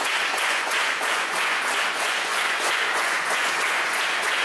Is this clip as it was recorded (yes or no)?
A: no